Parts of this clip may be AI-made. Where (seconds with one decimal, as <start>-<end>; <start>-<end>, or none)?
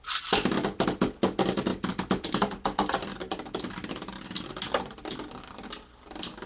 none